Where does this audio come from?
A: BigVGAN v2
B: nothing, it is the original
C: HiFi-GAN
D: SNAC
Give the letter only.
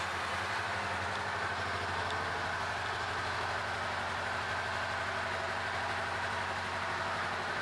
B